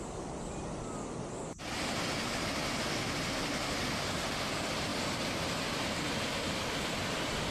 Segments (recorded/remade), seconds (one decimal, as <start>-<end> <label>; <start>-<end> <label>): 0.0-7.5 recorded